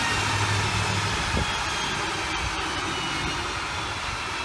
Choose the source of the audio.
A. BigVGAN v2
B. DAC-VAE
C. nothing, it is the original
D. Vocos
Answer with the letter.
C